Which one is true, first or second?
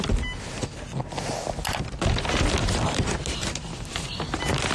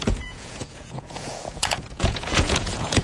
first